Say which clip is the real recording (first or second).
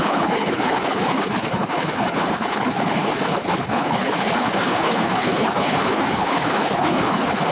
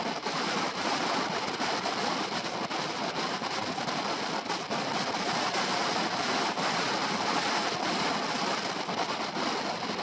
second